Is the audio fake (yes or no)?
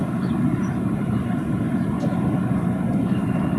no